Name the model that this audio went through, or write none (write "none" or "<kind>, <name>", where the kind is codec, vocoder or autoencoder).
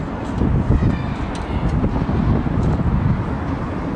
none